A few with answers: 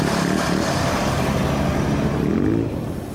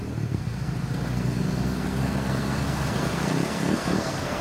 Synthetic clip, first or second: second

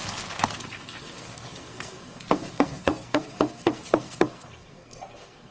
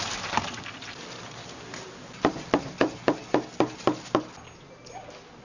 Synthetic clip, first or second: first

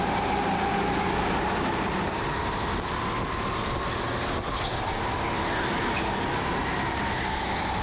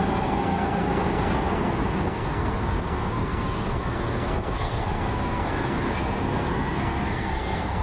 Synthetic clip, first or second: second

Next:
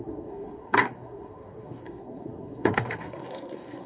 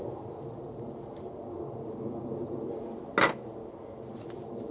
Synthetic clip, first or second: first